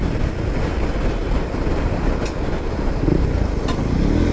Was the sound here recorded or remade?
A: recorded